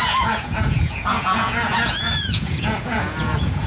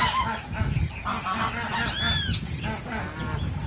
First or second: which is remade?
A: first